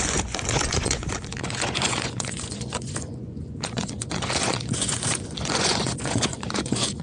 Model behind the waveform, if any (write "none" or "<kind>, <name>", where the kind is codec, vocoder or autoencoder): vocoder, Vocos